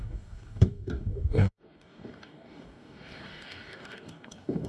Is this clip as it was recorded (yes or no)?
no